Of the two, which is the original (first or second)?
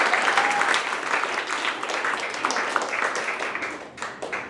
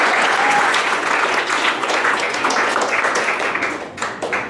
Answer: first